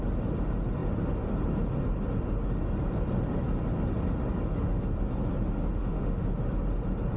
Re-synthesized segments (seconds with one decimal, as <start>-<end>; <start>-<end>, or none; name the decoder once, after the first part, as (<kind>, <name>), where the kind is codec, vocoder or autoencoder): 5.8-6.3 (autoencoder, DAC-VAE)